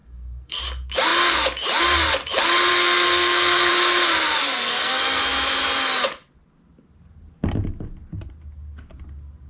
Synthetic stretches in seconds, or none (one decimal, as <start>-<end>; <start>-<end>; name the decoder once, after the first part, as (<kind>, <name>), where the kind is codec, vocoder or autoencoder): 0.0-0.6 (codec, SNAC); 2.7-3.7; 4.4-5.2

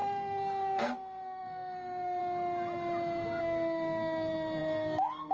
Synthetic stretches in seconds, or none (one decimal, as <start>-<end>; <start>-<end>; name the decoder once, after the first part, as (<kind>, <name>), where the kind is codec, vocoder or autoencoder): 0.0-2.2 (codec, SNAC); 3.4-5.3

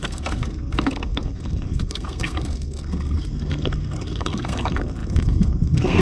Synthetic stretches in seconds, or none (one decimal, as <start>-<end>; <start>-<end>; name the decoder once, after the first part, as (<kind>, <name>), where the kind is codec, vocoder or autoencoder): 0.0-6.0 (codec, SNAC)

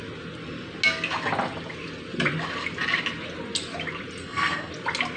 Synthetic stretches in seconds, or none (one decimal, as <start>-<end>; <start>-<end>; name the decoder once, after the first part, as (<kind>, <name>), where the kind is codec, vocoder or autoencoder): 4.2-4.7 (codec, SNAC)

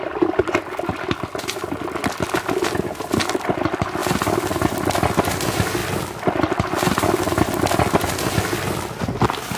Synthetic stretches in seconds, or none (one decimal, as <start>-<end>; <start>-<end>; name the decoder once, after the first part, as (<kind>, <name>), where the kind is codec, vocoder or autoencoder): none